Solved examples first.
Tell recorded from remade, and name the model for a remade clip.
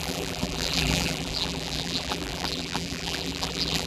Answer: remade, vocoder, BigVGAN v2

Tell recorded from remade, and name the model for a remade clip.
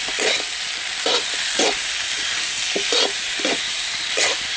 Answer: recorded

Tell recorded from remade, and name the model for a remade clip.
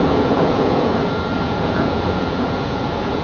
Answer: remade, vocoder, Vocos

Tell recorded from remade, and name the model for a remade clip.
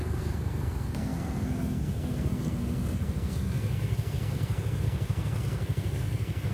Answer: remade, codec, SNAC